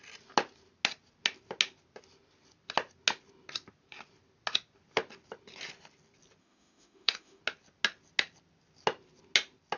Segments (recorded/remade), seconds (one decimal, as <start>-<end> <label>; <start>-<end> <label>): 0.0-6.4 recorded; 6.4-7.4 remade; 7.4-9.8 recorded